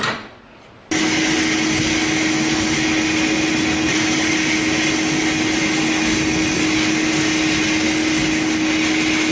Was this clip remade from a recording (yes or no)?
no